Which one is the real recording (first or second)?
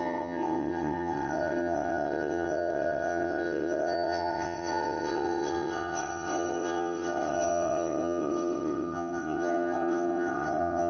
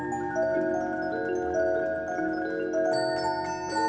second